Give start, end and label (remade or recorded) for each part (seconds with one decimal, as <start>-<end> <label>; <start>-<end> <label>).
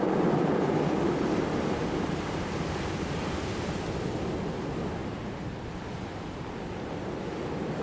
0.0-7.8 recorded